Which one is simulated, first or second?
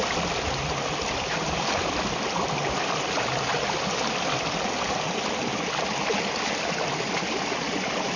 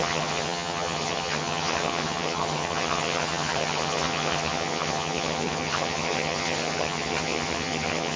second